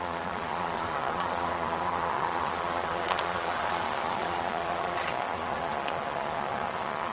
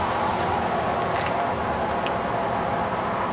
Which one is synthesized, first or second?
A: first